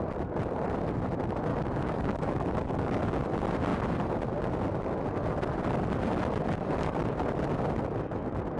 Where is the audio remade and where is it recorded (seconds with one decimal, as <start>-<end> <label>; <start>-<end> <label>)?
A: 0.0-1.5 recorded; 1.5-3.2 remade; 3.2-8.6 recorded